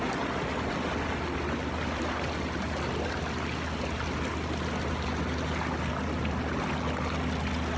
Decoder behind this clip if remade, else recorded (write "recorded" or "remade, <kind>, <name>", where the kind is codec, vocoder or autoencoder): recorded